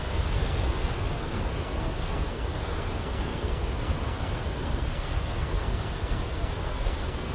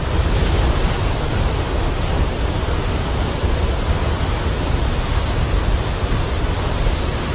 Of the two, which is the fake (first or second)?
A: first